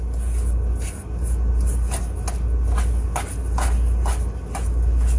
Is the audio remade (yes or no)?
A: no